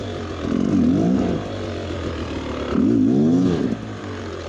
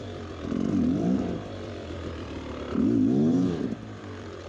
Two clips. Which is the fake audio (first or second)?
second